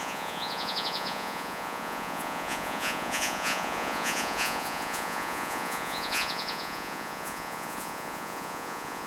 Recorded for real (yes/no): no